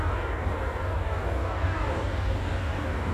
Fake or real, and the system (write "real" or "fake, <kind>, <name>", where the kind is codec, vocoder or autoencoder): fake, codec, DAC